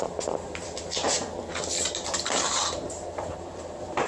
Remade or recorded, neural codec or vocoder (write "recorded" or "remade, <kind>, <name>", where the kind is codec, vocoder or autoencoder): remade, vocoder, BigVGAN v2